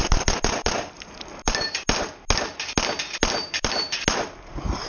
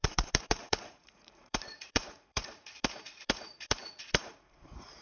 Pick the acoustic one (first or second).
first